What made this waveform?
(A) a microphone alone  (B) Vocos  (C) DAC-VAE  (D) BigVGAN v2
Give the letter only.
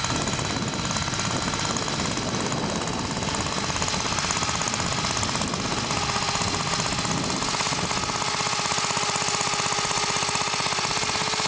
A